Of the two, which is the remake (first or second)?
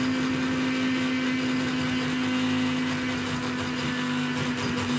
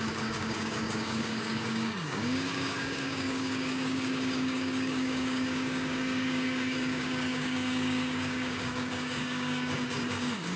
second